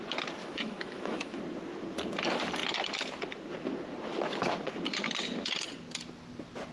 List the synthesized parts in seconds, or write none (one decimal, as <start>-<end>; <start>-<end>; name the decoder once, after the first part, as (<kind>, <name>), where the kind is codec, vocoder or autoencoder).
0.4-1.4 (autoencoder, DAC-VAE)